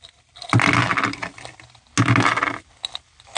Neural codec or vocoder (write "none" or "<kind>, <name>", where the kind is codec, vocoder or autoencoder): none